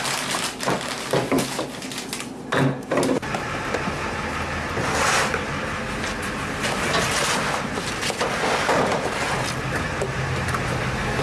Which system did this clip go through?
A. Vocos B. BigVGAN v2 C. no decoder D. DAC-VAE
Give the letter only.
C